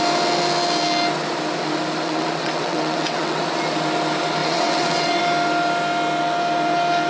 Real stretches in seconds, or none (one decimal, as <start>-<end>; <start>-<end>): 0.0-2.0; 3.4-4.4; 5.2-7.1